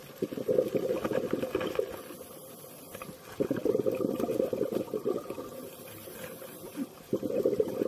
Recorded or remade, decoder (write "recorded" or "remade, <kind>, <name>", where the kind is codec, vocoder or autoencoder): recorded